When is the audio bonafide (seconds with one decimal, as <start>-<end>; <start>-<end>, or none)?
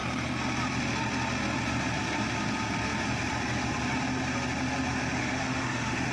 0.0-5.2